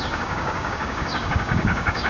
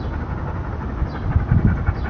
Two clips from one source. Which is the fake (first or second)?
first